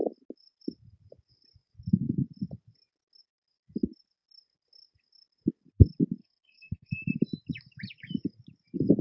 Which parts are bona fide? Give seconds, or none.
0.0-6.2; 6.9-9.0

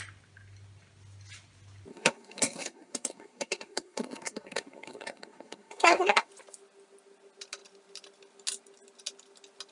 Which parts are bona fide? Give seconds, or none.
0.0-1.9; 6.3-9.7

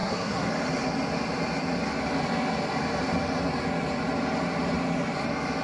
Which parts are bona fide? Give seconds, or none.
0.5-5.6

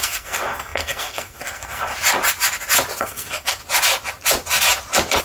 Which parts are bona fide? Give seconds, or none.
1.9-3.0; 3.6-5.2

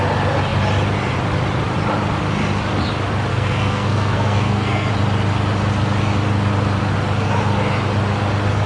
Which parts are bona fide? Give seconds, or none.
0.0-3.3; 4.9-8.7

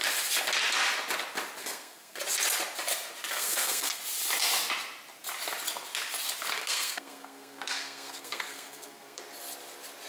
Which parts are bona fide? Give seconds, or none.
0.0-1.6; 2.2-3.3; 4.0-6.6; 9.2-10.1

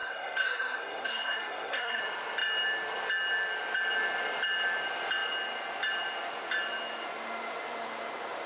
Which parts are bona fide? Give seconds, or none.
2.0-8.5

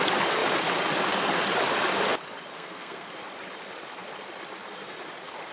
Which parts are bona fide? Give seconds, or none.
0.0-2.5; 3.1-5.5